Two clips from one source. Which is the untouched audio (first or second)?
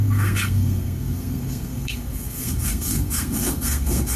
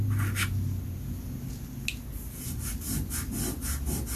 second